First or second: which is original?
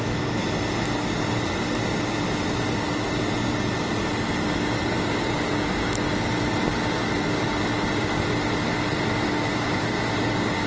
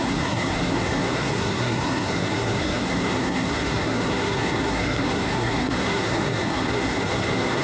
first